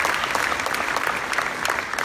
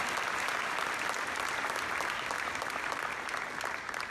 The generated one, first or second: first